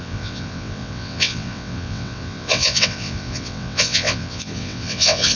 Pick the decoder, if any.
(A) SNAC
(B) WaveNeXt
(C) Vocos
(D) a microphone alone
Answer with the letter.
B